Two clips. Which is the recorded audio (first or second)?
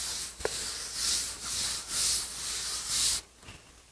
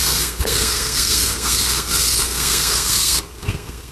first